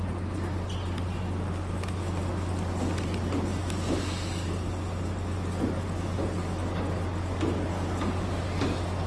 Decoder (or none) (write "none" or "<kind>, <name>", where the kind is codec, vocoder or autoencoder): none